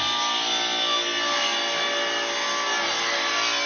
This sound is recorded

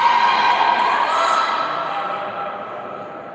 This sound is recorded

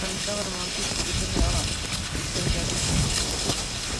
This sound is recorded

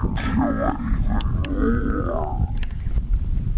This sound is remade